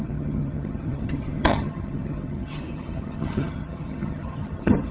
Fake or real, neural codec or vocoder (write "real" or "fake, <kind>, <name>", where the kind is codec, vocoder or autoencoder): fake, vocoder, HiFi-GAN